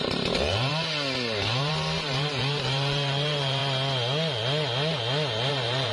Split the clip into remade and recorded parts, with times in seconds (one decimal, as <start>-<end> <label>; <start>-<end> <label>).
0.0-0.7 remade; 0.7-1.6 recorded; 1.6-3.6 remade; 3.6-5.5 recorded; 5.5-5.9 remade